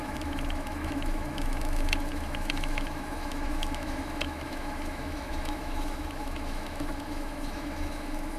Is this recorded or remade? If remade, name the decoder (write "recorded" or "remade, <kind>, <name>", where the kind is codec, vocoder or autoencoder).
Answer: remade, autoencoder, DAC-VAE